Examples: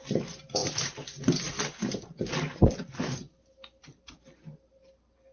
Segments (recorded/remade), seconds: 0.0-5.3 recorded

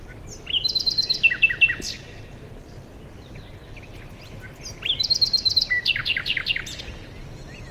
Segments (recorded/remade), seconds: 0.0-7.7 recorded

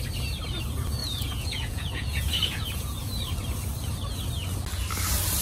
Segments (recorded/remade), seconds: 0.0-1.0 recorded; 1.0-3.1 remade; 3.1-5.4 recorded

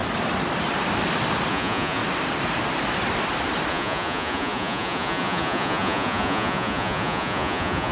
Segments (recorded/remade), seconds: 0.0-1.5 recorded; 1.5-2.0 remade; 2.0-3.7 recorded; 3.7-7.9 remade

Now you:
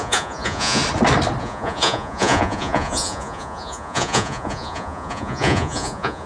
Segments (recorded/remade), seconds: 0.0-0.8 remade; 0.8-1.4 recorded; 1.4-6.3 remade